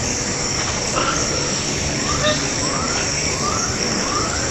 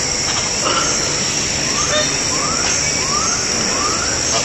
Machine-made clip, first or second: first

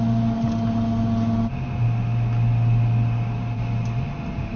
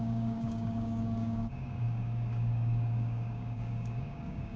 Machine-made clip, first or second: second